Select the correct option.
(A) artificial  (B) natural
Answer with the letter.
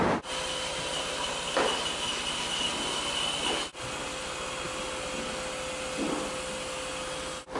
B